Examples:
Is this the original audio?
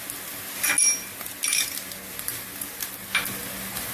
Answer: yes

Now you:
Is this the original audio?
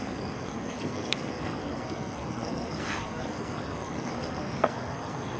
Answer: no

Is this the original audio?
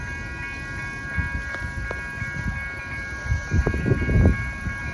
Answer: yes